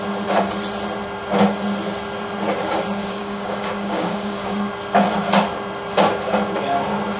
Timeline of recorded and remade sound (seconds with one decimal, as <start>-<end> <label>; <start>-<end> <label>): 0.0-3.0 recorded; 3.0-4.7 remade; 4.7-7.2 recorded